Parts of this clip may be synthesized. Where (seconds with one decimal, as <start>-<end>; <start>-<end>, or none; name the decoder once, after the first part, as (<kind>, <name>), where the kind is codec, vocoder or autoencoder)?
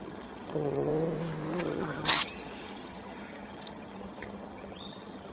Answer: 0.0-0.9 (vocoder, HiFi-GAN); 1.6-5.3